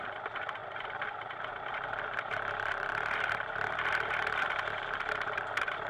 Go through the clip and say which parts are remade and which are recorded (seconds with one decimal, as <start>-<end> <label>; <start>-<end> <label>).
0.0-0.6 recorded; 0.6-4.1 remade; 4.1-5.9 recorded